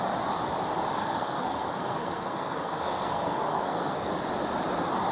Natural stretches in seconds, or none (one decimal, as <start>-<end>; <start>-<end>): 0.0-1.0; 4.1-5.1